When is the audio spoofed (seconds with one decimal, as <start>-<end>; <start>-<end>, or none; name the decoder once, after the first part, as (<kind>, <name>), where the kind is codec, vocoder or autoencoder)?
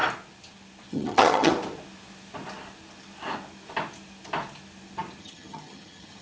0.9-1.5 (vocoder, HiFi-GAN); 5.2-6.2